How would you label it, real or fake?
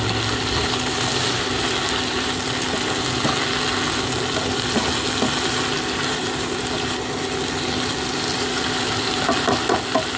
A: real